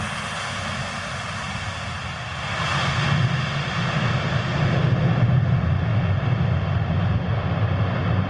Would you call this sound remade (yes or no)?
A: no